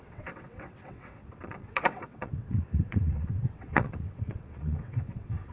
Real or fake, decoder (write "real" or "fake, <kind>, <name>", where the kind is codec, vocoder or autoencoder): fake, vocoder, WaveNeXt